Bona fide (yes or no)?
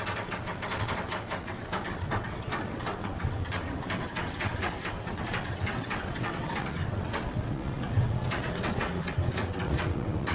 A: no